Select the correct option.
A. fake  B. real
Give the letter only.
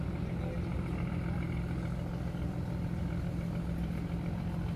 B